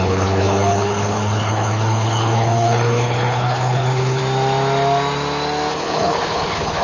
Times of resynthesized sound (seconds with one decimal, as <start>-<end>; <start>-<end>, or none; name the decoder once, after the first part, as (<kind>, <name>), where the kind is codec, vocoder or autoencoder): 0.0-4.2 (codec, HILCodec); 5.7-6.8